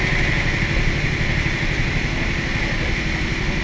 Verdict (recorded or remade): recorded